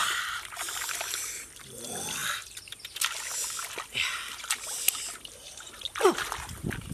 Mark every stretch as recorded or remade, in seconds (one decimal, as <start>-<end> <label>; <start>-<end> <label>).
0.0-0.9 remade; 0.9-6.9 recorded